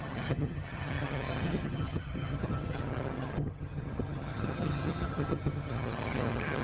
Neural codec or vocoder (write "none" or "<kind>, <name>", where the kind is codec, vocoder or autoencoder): vocoder, HiFi-GAN